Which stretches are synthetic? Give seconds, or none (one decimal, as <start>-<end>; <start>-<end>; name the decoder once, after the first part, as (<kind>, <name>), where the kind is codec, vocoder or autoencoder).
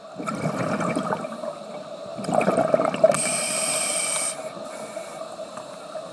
none